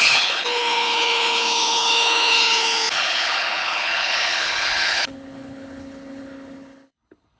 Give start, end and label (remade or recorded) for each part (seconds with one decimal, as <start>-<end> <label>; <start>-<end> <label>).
0.0-7.4 remade